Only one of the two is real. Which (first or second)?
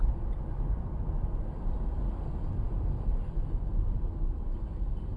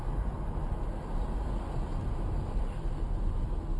second